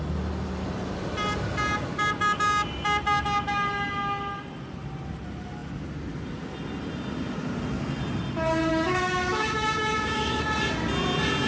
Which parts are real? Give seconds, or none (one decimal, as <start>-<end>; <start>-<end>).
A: 0.0-8.7; 10.4-11.5

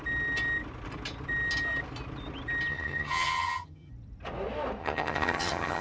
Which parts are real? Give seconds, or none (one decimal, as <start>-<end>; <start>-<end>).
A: 0.0-2.7; 3.9-4.8

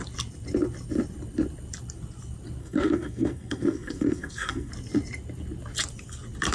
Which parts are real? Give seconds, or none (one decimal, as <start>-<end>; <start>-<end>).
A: 0.0-2.6; 4.7-6.5

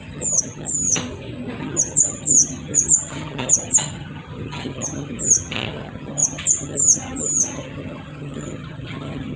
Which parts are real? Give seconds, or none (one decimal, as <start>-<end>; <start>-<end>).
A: 1.0-1.6

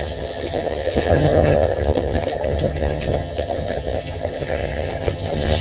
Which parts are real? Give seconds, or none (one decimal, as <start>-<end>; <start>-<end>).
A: none

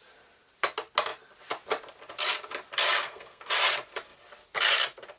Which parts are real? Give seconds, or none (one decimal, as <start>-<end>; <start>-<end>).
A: 0.0-3.0; 3.5-5.2